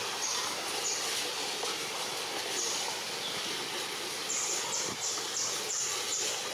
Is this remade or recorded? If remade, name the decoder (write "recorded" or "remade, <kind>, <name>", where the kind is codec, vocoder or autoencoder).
recorded